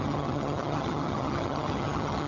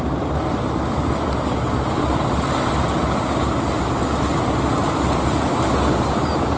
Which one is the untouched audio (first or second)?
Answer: second